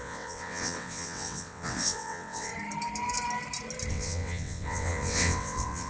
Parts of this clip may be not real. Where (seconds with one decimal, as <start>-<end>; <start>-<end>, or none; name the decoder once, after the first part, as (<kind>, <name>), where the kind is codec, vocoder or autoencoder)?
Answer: 0.0-2.5 (vocoder, WaveNeXt); 3.9-5.9